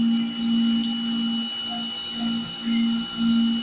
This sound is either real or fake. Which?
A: real